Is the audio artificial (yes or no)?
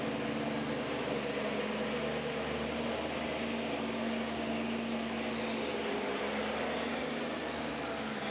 no